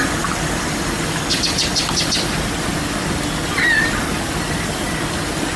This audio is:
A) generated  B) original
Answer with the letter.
B